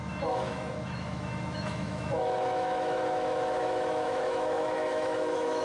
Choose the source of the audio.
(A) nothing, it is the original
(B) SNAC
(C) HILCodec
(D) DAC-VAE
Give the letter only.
D